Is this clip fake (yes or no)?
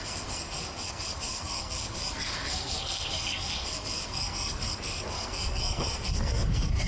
yes